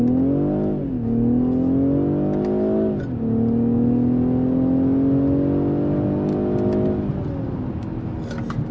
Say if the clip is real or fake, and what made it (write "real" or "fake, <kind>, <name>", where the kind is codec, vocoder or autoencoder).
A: real